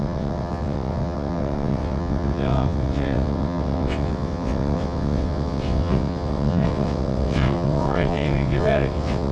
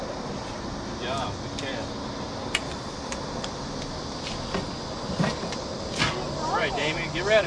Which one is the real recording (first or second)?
second